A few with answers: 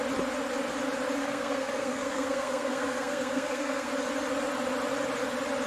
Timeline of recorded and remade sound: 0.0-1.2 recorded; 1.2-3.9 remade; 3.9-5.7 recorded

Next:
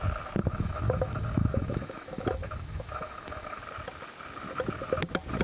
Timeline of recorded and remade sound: 0.0-0.4 recorded; 0.4-3.6 remade; 3.6-5.4 recorded

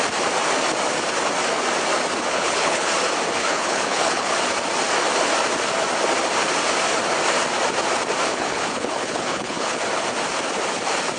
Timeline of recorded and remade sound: 0.0-2.3 recorded; 2.3-2.9 remade; 2.9-3.4 recorded; 3.4-4.3 remade; 4.3-8.3 recorded; 8.3-9.8 remade; 9.8-11.2 recorded

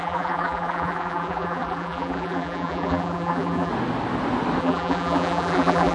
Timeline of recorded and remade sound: 0.0-3.7 remade; 3.7-4.6 recorded; 4.6-5.9 remade